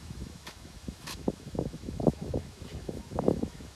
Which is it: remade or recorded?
remade